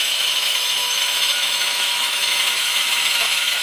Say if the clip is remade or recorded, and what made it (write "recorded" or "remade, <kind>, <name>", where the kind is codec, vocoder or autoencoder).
remade, autoencoder, DAC-VAE